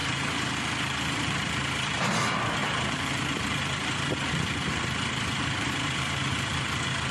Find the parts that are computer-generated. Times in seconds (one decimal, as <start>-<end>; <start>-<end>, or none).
0.0-2.0; 2.6-7.1